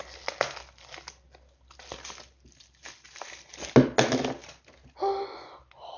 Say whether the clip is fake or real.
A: real